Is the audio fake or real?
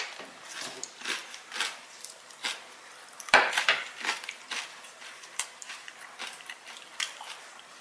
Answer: fake